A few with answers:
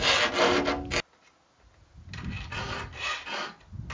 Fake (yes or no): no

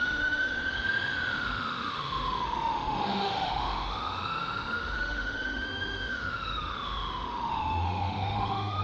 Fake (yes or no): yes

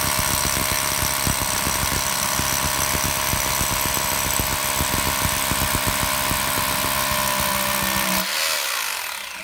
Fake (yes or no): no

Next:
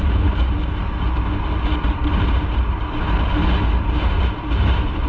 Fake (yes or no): no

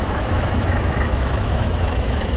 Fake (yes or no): yes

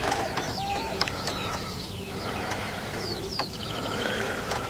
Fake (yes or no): yes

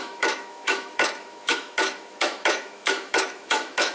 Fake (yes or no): yes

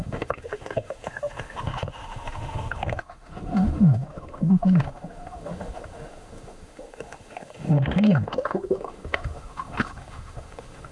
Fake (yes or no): yes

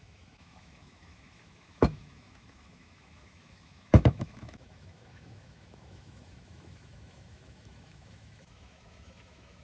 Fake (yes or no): yes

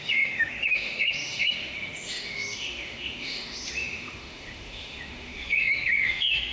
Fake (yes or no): yes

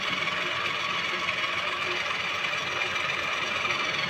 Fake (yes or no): no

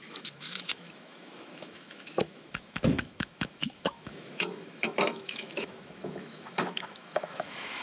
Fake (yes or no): yes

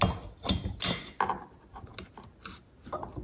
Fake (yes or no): no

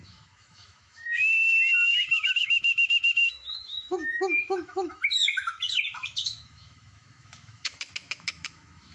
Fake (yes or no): yes